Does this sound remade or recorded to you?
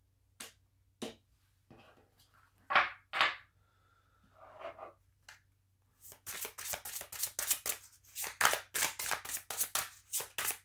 recorded